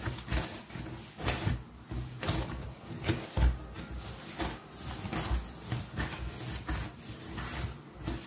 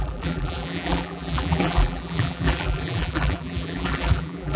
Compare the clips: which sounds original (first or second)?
first